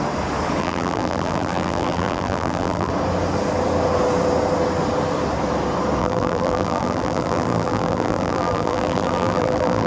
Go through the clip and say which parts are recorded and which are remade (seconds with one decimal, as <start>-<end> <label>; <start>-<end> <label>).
0.0-0.6 recorded; 0.6-2.9 remade; 2.9-6.0 recorded; 6.0-9.9 remade

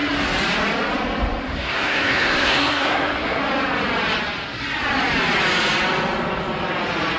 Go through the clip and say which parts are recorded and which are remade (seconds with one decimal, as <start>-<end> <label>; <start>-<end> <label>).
0.0-1.5 recorded; 1.5-3.4 remade; 3.4-7.2 recorded

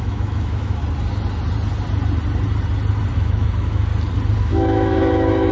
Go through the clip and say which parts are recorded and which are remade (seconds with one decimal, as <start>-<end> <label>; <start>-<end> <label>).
0.0-0.8 remade; 0.8-3.1 recorded; 3.1-3.9 remade; 3.9-4.4 recorded; 4.4-5.5 remade

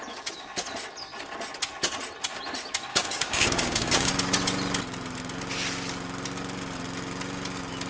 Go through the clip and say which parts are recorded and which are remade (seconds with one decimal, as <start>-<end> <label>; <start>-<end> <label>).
0.0-2.9 recorded; 2.9-4.1 remade; 4.1-7.9 recorded

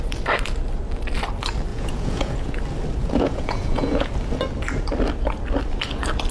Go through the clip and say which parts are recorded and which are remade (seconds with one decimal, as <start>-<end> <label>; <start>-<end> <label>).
0.0-1.7 recorded; 1.7-2.6 remade; 2.6-3.0 recorded; 3.0-4.1 remade; 4.1-6.3 recorded

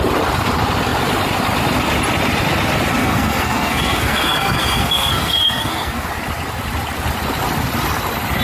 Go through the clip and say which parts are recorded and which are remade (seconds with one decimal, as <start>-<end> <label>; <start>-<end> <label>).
0.0-3.0 recorded; 3.0-6.1 remade; 6.1-8.4 recorded